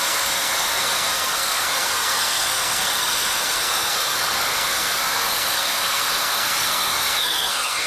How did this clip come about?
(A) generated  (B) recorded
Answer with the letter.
A